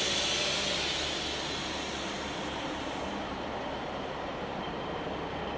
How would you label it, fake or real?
real